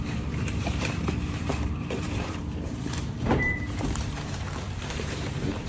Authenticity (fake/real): fake